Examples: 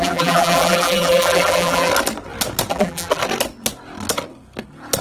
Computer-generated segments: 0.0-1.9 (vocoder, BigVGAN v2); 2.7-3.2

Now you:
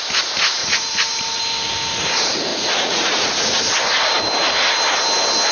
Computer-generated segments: 0.6-1.4 (vocoder, Vocos); 2.5-3.6

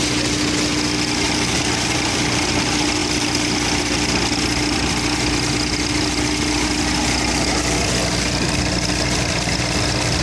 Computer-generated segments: none